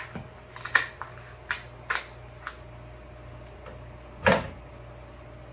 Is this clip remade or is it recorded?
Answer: recorded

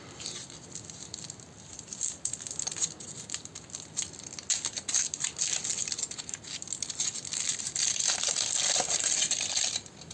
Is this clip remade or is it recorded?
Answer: recorded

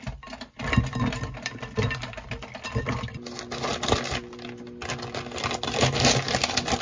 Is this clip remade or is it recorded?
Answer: recorded